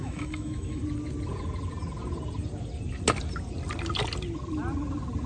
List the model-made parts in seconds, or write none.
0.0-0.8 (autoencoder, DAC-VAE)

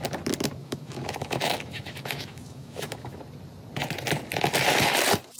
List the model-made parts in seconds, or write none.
0.6-3.2 (autoencoder, DAC-VAE)

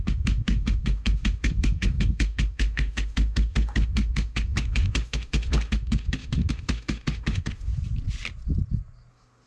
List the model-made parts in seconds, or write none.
0.0-7.7 (autoencoder, DAC-VAE); 9.1-9.5

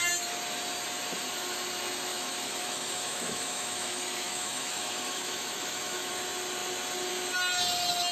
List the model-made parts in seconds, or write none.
2.1-6.1 (autoencoder, DAC-VAE)

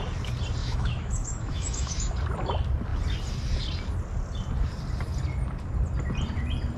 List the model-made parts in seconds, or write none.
0.6-2.1 (autoencoder, DAC-VAE)